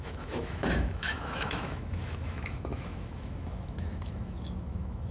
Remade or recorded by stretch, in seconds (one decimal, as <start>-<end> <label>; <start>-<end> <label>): 0.0-5.1 remade